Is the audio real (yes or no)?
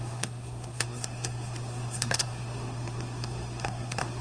no